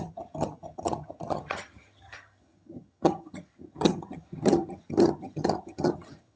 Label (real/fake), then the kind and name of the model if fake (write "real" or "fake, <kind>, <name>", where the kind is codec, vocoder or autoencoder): fake, vocoder, HiFi-GAN